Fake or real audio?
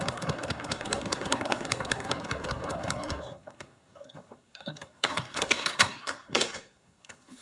fake